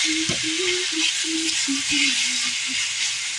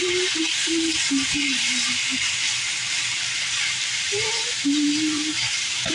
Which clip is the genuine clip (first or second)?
first